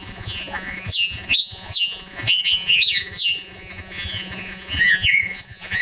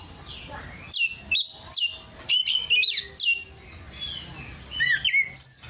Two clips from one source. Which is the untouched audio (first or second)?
second